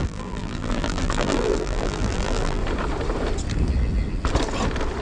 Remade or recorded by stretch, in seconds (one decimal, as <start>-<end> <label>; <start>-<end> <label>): 0.0-2.6 remade; 2.6-5.0 recorded